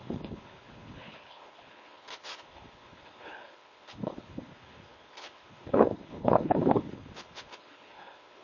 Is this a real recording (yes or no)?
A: no